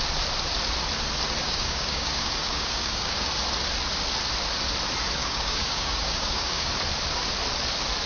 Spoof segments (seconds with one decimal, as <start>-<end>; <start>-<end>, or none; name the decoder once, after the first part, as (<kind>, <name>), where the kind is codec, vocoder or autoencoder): 1.4-3.3 (codec, DAC); 5.2-6.7

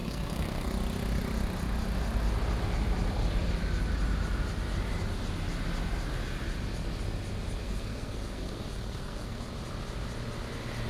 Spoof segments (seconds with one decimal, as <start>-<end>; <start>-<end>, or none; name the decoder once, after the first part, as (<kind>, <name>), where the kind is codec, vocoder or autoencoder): 0.0-0.7 (codec, SNAC); 7.6-9.5

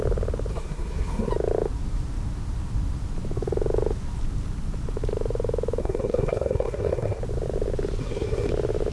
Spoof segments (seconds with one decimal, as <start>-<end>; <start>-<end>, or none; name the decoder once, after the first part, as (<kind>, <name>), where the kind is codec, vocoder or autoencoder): 0.5-1.3 (codec, SNAC); 5.8-7.2; 8.0-8.5

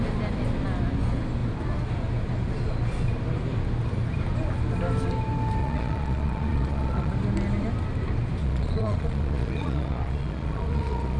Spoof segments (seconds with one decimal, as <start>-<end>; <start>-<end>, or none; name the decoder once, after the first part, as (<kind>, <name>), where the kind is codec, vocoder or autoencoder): 5.6-7.1 (vocoder, Vocos); 8.4-11.2

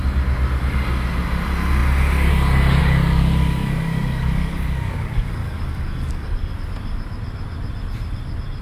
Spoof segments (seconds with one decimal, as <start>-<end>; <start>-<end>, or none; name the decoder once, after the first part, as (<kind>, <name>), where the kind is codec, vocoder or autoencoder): 2.8-6.5 (codec, DAC)

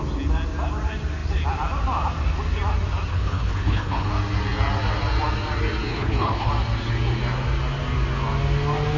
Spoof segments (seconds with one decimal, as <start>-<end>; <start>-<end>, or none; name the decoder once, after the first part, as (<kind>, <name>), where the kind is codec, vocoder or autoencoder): 3.1-4.1 (codec, HILCodec); 5.9-6.5

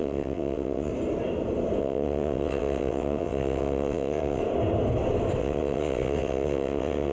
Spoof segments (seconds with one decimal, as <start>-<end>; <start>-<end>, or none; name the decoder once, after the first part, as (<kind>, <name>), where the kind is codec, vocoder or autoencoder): 0.0-0.9 (vocoder, WaveNeXt); 1.8-4.4; 5.4-7.1

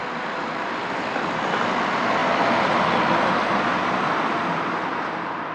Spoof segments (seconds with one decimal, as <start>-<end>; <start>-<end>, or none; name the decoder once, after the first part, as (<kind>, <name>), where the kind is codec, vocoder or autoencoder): 0.0-1.2 (vocoder, BigVGAN v2); 2.2-2.9; 3.8-5.0